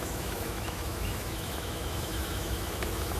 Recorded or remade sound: remade